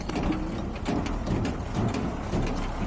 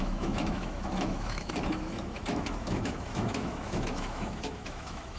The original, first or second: first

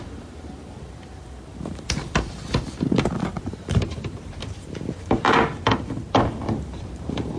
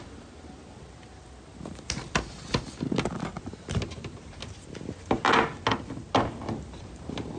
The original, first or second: second